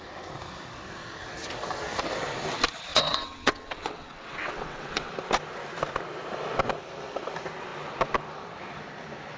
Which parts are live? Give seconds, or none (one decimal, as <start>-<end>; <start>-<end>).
0.0-2.9; 5.1-9.4